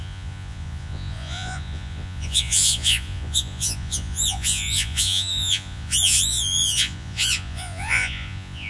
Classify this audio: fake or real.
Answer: fake